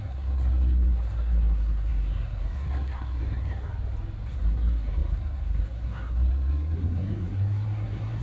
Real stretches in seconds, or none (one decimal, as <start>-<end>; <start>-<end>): 3.7-4.3